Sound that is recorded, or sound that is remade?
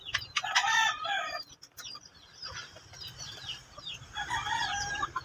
recorded